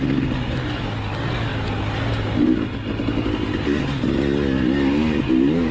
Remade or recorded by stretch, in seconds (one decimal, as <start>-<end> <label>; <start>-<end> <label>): 0.0-5.7 recorded